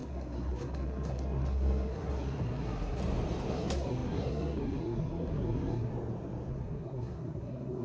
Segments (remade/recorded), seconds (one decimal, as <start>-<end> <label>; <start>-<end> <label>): 0.0-3.0 remade; 3.0-3.5 recorded; 3.5-5.9 remade; 5.9-6.5 recorded; 6.5-7.8 remade

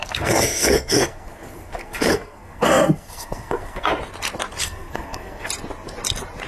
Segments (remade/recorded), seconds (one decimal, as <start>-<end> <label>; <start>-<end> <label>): 0.0-3.9 remade; 3.9-4.6 recorded; 4.6-5.5 remade; 5.5-6.5 recorded

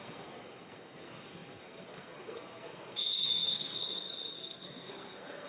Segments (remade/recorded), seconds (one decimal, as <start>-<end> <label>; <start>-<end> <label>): 0.0-5.5 remade

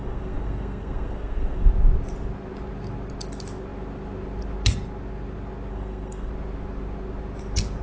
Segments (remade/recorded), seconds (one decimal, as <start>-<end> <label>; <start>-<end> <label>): 0.0-1.7 remade; 1.7-5.7 recorded; 5.7-6.3 remade; 6.3-7.8 recorded

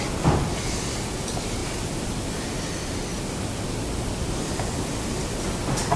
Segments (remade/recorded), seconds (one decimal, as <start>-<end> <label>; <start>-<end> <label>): 0.0-6.0 recorded

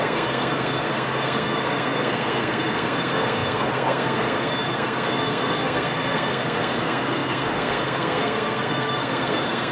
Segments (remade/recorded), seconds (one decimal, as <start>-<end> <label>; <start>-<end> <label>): 0.0-9.7 remade

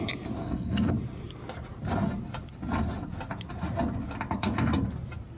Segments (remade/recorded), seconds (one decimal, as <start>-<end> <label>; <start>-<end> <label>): 0.0-0.4 recorded; 0.4-0.9 remade; 0.9-5.4 recorded